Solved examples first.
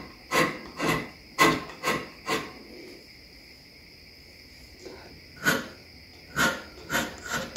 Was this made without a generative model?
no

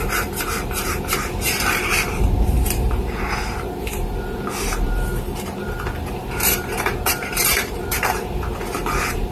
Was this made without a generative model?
no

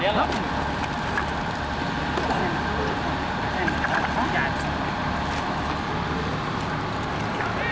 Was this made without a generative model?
yes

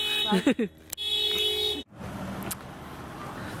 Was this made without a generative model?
yes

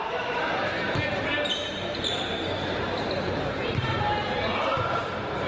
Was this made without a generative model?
no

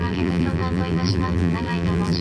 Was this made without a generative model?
no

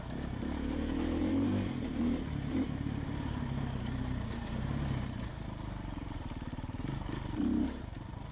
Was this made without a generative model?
no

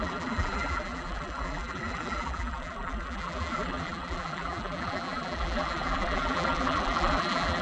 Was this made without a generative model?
no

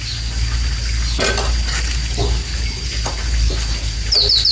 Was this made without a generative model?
yes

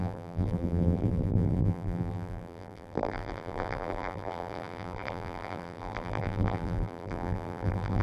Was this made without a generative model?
no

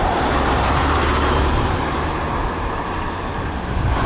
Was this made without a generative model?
no